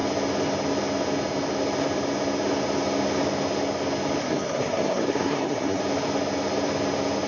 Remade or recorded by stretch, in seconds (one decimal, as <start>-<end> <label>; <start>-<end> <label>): 0.0-4.2 recorded; 4.2-5.8 remade; 5.8-7.3 recorded